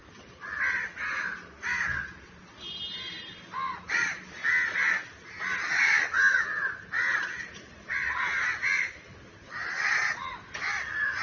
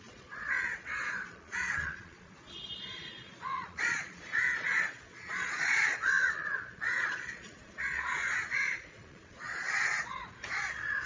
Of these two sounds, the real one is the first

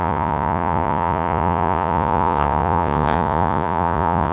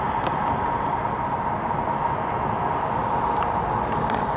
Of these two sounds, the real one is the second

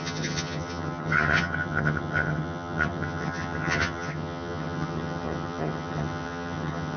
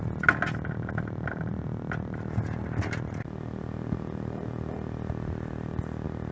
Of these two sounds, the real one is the second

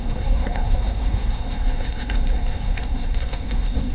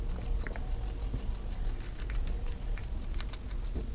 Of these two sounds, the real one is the second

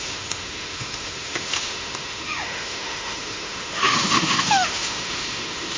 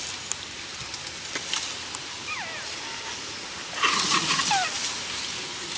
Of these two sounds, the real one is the second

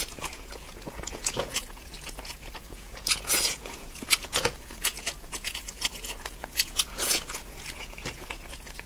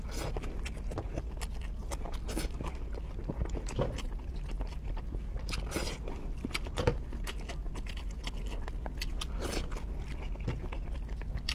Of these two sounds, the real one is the second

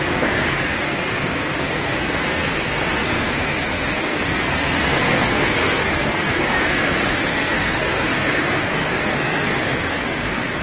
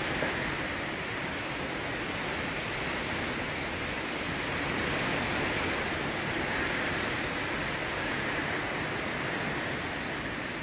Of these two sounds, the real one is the second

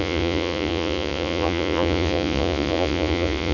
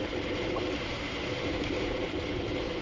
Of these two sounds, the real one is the second